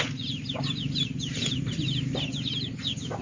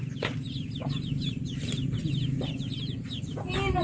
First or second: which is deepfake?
second